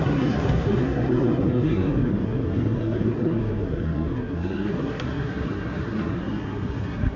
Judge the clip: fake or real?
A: fake